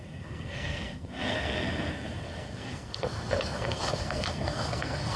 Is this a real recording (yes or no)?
no